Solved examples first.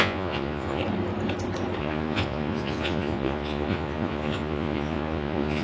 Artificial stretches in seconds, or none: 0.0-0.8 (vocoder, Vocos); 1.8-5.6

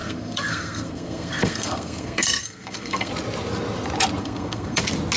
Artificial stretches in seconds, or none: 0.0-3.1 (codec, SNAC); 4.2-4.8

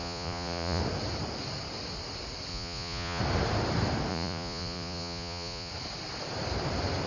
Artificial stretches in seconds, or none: 0.0-0.8 (vocoder, Vocos); 2.5-3.2; 4.1-5.7

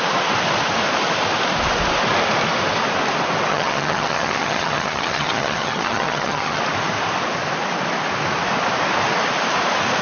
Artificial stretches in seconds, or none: 3.5-6.6 (vocoder, HiFi-GAN)

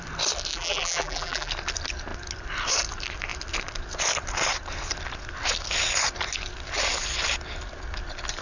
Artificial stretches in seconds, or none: 0.5-1.5 (vocoder, BigVGAN v2)

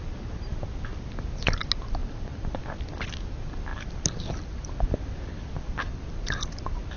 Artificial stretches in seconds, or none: 2.0-2.6 (vocoder, BigVGAN v2); 3.7-7.0

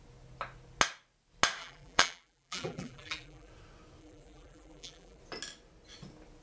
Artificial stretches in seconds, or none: 1.6-3.5 (vocoder, BigVGAN v2); 4.0-5.2

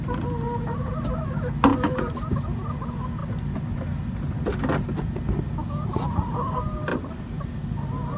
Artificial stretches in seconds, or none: 1.7-2.3 (vocoder, BigVGAN v2)